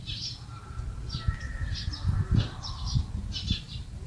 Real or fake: real